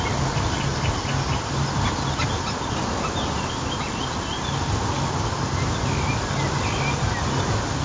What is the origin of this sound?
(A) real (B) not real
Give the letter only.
A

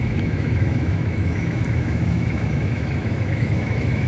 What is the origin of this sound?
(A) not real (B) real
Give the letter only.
A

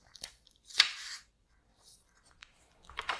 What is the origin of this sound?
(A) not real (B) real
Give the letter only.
A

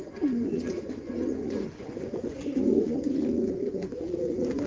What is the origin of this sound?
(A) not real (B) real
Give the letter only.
A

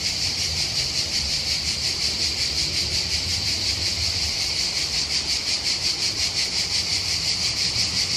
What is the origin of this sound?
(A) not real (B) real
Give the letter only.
B